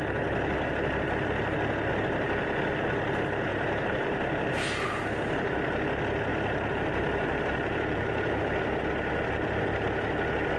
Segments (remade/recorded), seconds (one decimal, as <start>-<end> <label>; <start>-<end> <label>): 0.0-3.5 recorded; 3.5-4.9 remade; 4.9-6.3 recorded; 6.3-8.4 remade; 8.4-10.6 recorded